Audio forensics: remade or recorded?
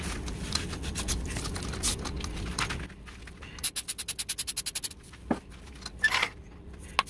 recorded